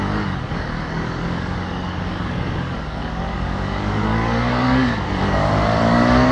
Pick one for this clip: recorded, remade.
remade